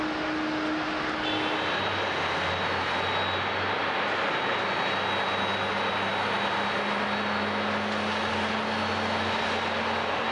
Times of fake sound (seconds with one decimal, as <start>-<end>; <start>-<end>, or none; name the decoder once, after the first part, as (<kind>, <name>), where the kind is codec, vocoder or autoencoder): none